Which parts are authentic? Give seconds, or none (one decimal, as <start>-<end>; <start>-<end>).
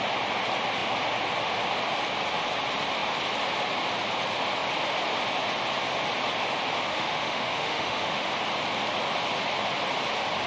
0.0-6.9; 8.3-10.5